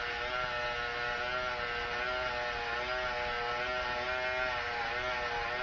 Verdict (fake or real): real